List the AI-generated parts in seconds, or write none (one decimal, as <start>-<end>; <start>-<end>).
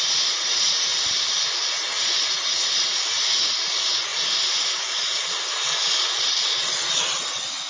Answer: 0.0-0.9; 1.6-7.7